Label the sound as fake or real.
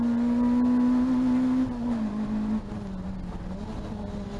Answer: real